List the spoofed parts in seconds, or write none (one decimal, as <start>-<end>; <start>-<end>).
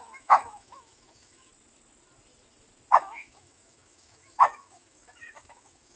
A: 0.0-1.5; 3.0-6.0